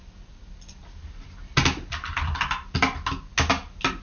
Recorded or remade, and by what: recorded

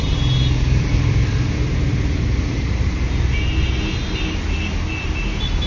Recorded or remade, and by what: recorded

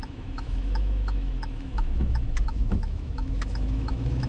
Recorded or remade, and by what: remade, autoencoder, DAC-VAE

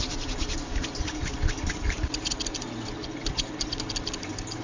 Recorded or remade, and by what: recorded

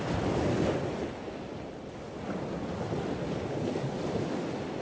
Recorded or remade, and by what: recorded